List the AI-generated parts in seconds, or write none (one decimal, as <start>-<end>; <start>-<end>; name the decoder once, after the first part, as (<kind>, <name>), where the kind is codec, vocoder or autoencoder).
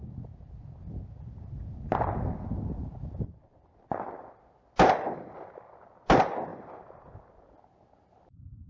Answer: 6.5-7.4 (vocoder, BigVGAN v2)